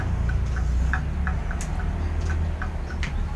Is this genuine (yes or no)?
yes